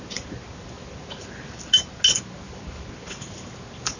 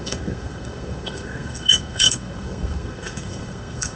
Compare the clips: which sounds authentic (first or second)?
first